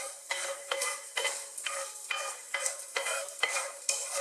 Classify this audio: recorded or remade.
remade